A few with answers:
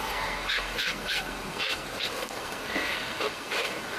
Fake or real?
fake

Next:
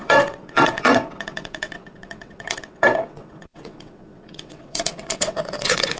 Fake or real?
fake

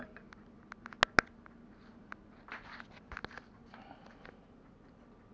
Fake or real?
real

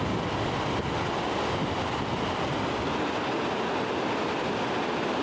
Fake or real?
real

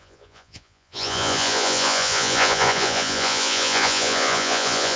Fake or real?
fake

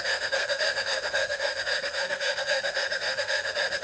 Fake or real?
fake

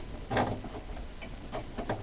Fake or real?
real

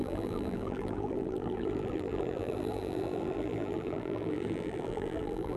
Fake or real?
fake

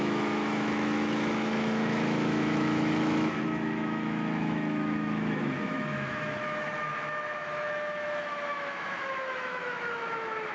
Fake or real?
fake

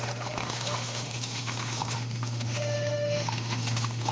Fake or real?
fake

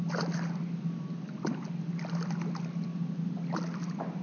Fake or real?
real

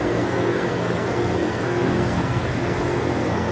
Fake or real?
fake